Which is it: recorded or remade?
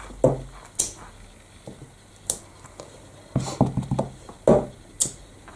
recorded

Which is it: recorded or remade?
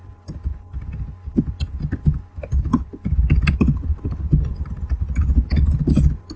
recorded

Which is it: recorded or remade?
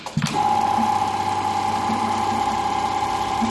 recorded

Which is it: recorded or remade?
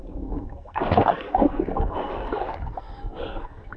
remade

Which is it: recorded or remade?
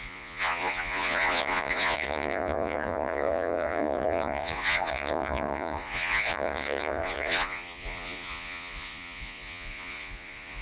remade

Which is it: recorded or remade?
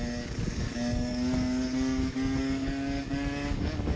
remade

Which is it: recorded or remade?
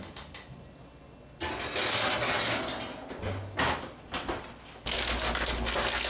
recorded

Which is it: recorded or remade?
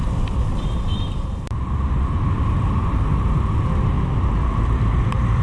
remade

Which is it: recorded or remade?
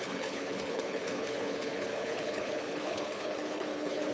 remade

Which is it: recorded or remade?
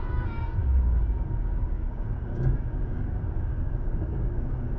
remade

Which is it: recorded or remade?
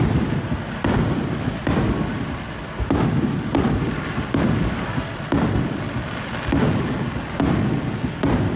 recorded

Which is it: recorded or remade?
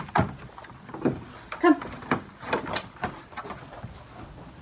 recorded